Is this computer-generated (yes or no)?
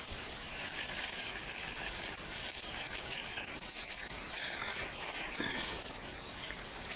yes